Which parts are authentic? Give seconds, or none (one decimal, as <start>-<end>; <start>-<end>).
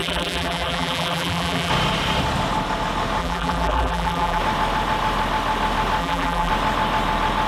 1.7-3.2; 4.4-6.0; 6.5-7.5